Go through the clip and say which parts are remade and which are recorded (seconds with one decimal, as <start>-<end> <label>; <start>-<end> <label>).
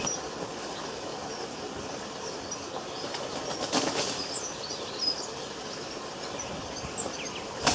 0.0-7.7 recorded